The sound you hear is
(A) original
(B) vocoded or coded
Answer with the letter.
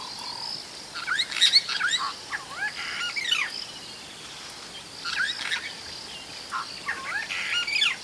A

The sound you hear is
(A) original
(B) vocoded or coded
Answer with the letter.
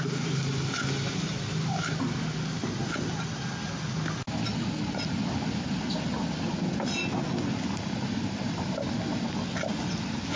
A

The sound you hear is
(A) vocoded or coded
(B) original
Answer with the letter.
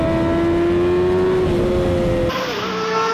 B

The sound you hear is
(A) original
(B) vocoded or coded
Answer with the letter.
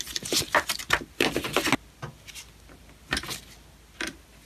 A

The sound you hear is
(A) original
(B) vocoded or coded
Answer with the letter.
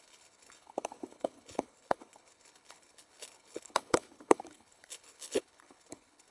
B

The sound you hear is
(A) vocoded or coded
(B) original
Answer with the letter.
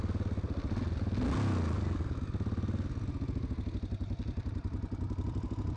B